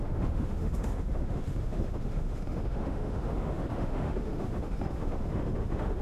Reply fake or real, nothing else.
fake